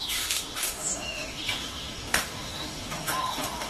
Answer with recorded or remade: remade